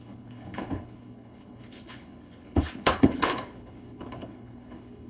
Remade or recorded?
remade